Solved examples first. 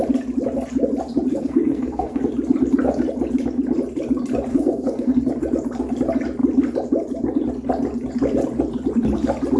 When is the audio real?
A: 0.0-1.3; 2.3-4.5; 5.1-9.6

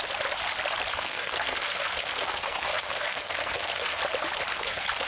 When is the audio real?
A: 0.0-0.9; 4.0-4.5